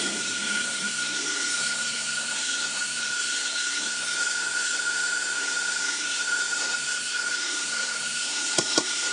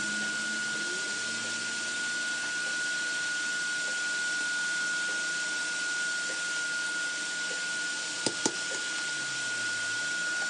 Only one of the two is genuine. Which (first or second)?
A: second